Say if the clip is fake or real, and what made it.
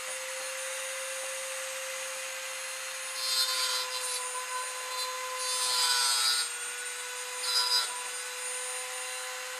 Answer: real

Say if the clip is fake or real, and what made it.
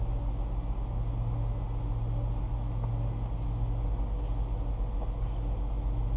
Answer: real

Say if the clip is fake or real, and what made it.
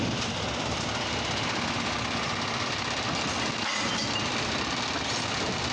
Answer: real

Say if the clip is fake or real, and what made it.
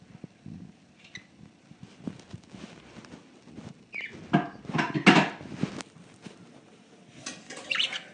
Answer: real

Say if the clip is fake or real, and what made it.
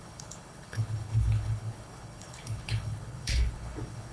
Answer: fake, codec, HILCodec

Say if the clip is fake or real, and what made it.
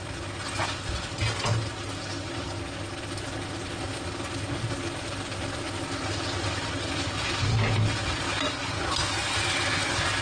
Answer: real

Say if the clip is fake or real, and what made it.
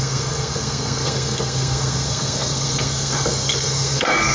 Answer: fake, codec, SNAC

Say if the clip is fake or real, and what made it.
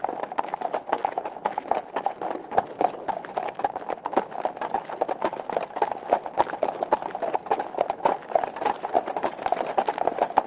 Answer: real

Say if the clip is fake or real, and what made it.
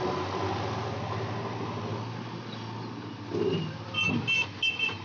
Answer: real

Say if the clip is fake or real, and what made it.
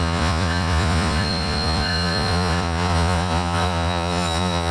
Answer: fake, vocoder, Vocos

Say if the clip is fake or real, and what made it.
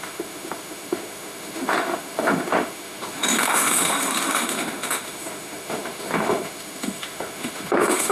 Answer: fake, autoencoder, DAC-VAE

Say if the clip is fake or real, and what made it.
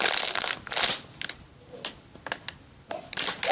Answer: real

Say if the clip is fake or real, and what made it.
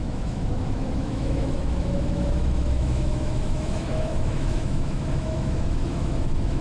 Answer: fake, autoencoder, DAC-VAE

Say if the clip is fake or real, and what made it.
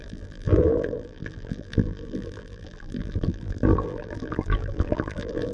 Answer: fake, vocoder, BigVGAN v2